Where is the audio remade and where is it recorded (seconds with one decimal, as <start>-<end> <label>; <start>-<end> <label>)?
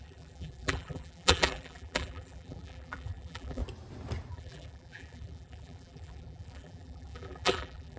0.0-3.6 remade; 3.6-4.3 recorded; 4.3-8.0 remade